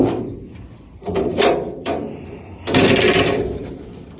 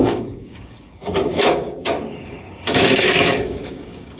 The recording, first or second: first